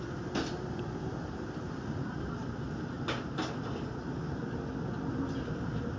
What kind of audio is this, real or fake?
real